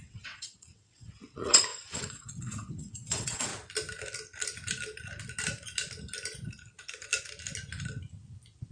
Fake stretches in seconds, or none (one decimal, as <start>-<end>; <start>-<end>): 0.0-3.5